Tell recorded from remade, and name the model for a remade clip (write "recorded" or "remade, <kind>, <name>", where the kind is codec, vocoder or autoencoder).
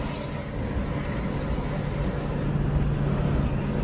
recorded